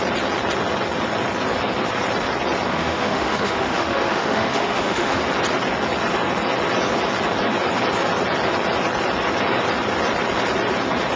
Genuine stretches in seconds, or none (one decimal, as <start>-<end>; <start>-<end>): 0.0-2.7; 5.2-11.2